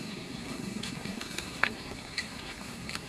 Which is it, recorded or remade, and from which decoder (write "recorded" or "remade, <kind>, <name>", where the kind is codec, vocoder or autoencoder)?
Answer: remade, codec, SNAC